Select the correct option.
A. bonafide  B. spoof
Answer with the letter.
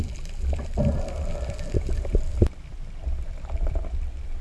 A